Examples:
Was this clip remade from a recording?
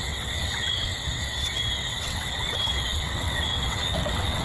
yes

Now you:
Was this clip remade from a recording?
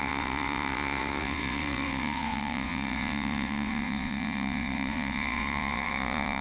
yes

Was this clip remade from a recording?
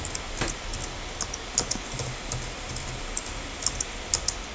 no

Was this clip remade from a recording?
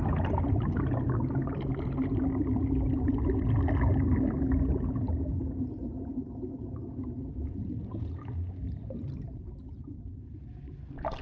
no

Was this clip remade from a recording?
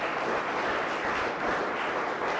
no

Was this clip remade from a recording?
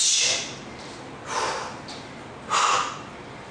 no